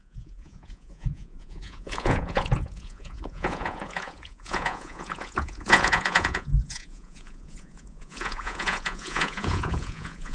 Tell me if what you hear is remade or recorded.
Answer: remade